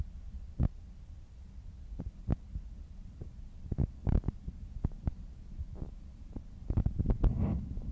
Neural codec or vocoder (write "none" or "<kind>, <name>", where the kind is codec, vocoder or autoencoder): vocoder, BigVGAN v2